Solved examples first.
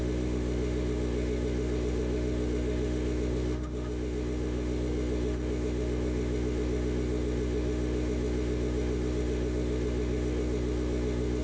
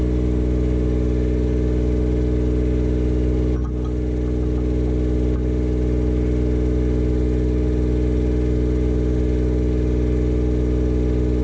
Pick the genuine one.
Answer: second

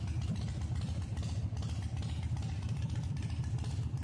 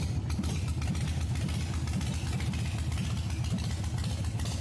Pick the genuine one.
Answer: second